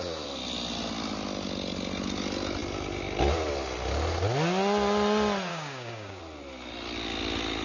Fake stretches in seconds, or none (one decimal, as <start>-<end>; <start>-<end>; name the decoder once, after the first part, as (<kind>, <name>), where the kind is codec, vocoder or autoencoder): 5.5-6.2 (codec, DAC)